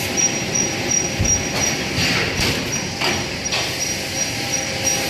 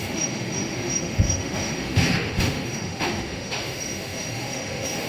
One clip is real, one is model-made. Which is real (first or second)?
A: first